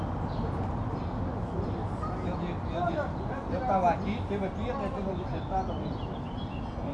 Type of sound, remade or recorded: recorded